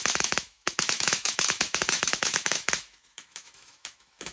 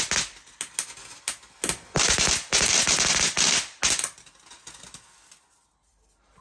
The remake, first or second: first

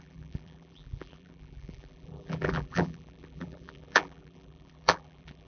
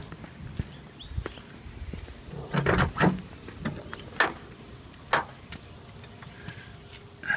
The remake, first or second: first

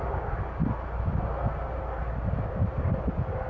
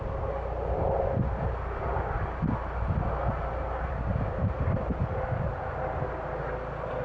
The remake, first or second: second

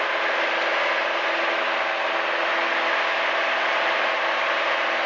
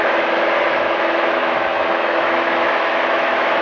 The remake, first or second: second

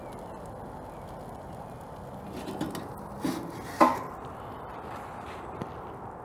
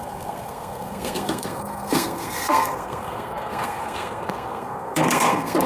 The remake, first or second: second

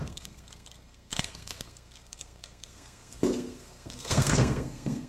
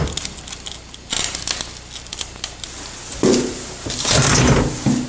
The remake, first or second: first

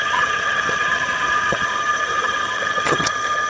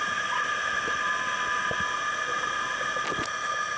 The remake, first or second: first